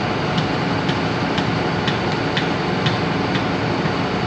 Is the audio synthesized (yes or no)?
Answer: no